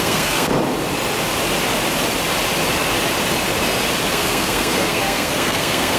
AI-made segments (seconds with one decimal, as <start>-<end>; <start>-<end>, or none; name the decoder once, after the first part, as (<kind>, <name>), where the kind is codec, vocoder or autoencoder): 0.0-0.5 (codec, SNAC); 4.1-6.0